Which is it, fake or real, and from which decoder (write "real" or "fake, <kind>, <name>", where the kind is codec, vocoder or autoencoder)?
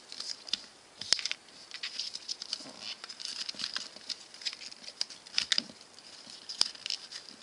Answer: real